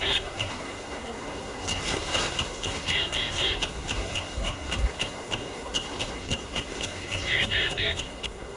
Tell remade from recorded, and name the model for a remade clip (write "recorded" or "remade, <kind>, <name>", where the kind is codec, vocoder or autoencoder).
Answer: remade, codec, SNAC